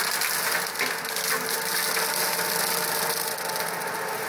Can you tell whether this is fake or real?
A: real